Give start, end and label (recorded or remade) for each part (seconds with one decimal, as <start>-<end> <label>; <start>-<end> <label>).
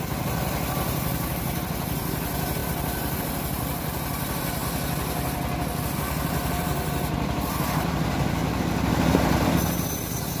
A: 0.0-4.6 remade; 4.6-5.8 recorded; 5.8-8.4 remade; 8.4-9.1 recorded; 9.1-10.4 remade